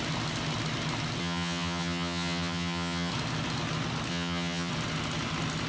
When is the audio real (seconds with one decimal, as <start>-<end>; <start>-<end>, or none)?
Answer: 0.0-1.2; 3.1-4.1; 4.7-5.7